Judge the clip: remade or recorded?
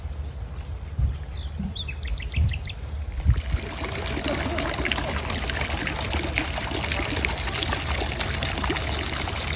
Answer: recorded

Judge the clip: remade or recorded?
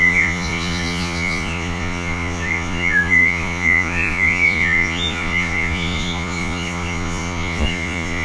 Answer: remade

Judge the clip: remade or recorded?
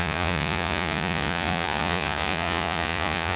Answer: remade